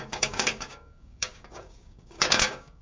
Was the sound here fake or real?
fake